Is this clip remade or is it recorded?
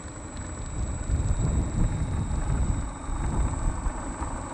recorded